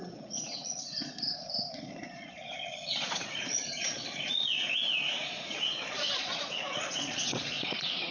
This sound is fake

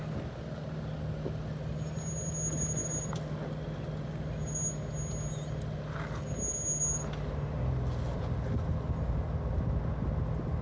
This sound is real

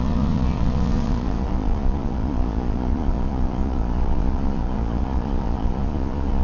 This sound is fake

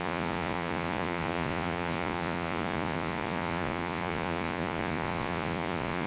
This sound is fake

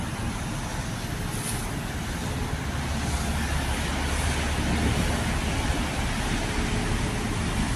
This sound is real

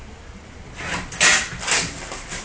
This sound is real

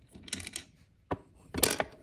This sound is real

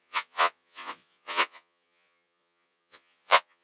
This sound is fake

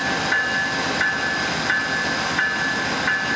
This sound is real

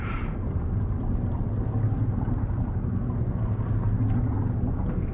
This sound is real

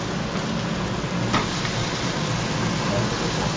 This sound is real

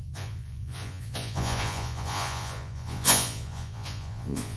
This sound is fake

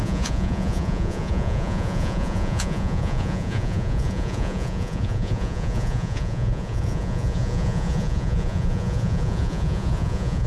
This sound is fake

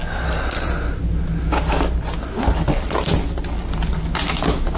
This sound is real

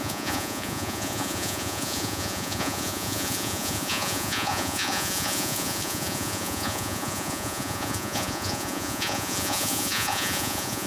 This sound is fake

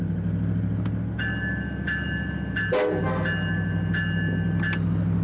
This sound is real